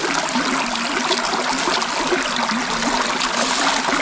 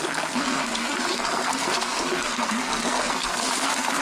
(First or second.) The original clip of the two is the first